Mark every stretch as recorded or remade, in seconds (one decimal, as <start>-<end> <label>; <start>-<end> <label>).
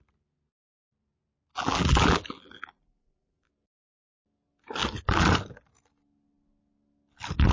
0.0-1.5 recorded; 1.5-3.5 remade; 3.5-7.5 recorded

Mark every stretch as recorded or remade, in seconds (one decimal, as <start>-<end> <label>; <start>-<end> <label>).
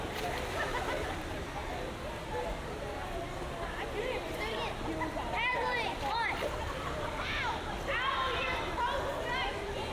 0.0-1.6 remade; 1.6-6.6 recorded; 6.6-9.9 remade